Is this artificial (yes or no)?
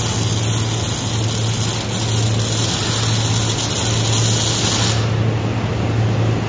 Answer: no